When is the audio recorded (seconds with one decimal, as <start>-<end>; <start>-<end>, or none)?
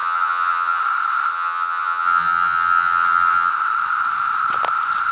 0.8-1.3; 3.5-5.1